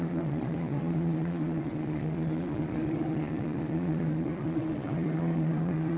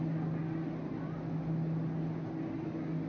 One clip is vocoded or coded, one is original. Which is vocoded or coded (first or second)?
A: first